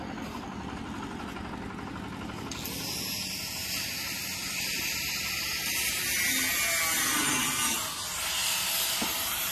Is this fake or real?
real